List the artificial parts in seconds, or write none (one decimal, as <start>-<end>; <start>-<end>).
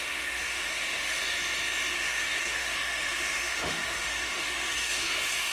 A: 0.0-1.2; 1.9-5.5